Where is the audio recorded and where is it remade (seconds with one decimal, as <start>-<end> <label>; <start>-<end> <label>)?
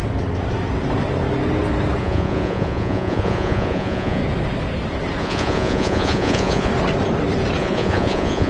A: 0.0-2.0 recorded; 2.0-4.2 remade; 4.2-5.2 recorded; 5.2-6.7 remade; 6.7-7.6 recorded; 7.6-8.5 remade